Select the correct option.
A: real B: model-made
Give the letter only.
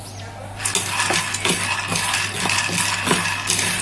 A